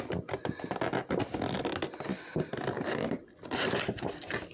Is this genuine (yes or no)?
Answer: yes